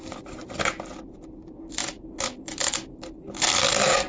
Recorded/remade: recorded